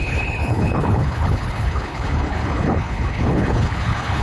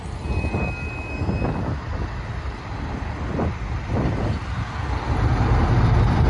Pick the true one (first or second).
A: second